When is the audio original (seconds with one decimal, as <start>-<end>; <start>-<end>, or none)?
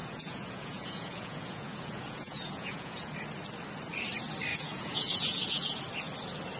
3.1-4.5; 5.8-6.6